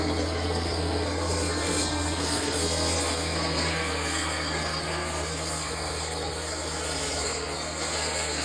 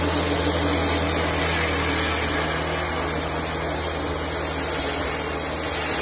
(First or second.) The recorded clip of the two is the second